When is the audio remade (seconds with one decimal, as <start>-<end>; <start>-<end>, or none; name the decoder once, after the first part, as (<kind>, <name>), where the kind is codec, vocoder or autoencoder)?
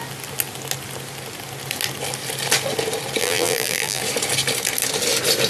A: 3.2-4.0 (vocoder, BigVGAN v2)